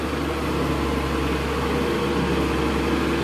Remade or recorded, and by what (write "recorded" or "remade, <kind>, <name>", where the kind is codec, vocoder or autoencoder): recorded